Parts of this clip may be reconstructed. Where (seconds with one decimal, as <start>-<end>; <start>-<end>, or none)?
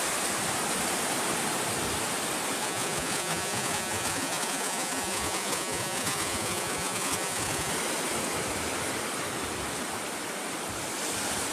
2.6-7.7